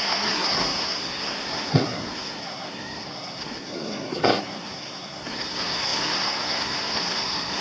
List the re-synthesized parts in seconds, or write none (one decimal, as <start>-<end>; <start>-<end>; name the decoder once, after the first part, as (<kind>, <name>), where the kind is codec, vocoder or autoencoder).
0.0-7.6 (codec, SNAC)

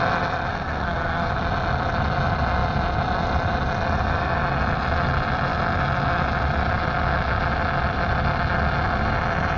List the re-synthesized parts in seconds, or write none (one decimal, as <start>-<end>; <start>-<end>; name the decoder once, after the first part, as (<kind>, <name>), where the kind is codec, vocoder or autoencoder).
0.5-1.3 (codec, SNAC)

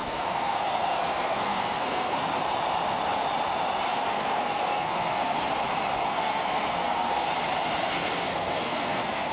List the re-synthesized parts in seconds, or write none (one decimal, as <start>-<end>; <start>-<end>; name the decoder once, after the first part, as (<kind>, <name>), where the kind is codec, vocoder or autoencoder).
0.0-2.2 (codec, SNAC); 3.9-5.4; 6.1-7.3; 7.8-9.3

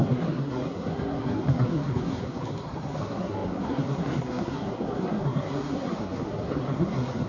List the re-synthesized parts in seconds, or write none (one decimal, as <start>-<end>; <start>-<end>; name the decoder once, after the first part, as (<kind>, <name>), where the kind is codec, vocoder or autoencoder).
0.0-7.3 (codec, SNAC)

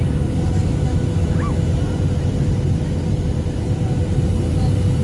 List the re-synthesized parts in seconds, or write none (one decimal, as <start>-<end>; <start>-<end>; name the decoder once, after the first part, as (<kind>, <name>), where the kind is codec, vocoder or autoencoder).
none